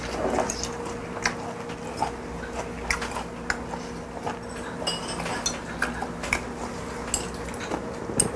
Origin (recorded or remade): recorded